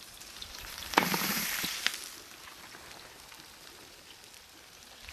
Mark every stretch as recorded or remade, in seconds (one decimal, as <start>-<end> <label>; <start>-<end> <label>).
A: 0.0-1.9 remade; 1.9-5.1 recorded